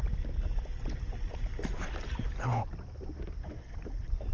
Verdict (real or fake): real